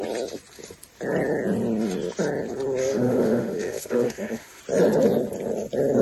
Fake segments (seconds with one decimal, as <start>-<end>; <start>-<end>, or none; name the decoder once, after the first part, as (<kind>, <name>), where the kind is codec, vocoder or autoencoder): 2.8-4.6 (autoencoder, DAC-VAE)